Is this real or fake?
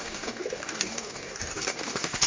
fake